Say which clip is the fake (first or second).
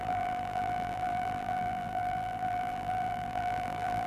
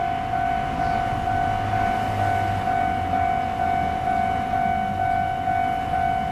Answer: first